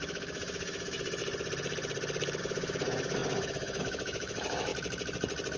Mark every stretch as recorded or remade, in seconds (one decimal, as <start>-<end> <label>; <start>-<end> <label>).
0.0-1.2 remade; 1.2-2.4 recorded; 2.4-4.7 remade; 4.7-5.6 recorded